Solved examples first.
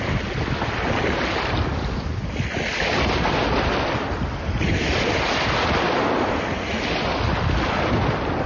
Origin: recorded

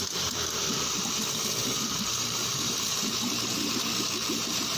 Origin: remade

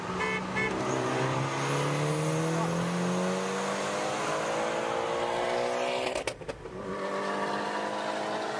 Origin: recorded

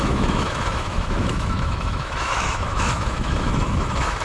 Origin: remade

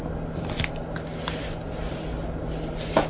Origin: recorded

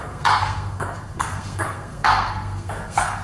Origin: remade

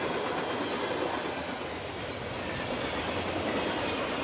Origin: recorded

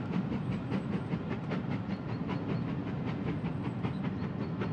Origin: recorded